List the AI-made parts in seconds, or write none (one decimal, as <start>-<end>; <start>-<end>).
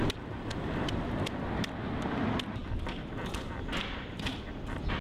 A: none